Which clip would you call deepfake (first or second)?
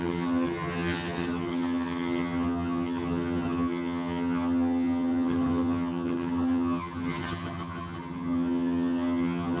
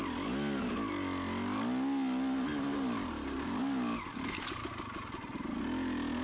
first